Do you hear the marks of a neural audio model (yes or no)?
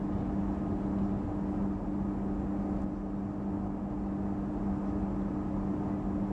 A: no